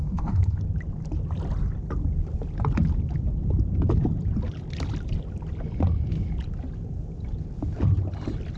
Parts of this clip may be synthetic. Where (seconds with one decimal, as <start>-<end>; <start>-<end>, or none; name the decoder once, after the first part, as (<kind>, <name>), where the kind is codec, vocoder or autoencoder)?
0.0-0.6 (codec, SNAC)